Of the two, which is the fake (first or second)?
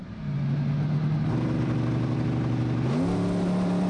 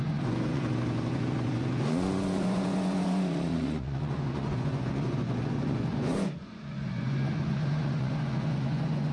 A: second